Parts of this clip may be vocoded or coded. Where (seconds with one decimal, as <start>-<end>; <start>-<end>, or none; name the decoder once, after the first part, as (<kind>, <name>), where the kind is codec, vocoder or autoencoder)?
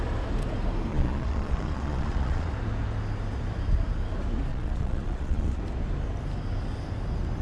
0.9-2.5 (vocoder, Vocos); 4.5-5.6